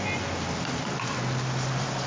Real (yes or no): yes